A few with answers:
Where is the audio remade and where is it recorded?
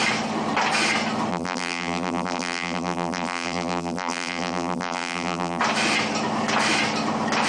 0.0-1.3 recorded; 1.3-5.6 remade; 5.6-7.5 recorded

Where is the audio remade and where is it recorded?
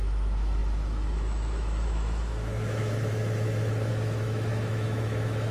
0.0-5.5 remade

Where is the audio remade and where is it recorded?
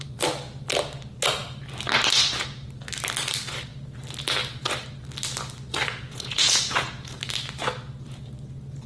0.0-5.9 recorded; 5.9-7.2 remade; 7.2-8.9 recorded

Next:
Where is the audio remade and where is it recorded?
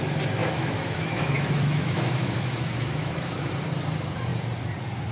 0.0-0.4 recorded; 0.4-3.5 remade; 3.5-5.1 recorded